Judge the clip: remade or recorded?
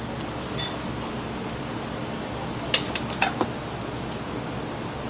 recorded